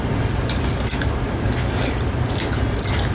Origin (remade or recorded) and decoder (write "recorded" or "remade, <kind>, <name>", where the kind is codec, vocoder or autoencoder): recorded